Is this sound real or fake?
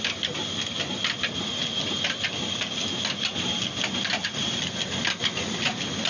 real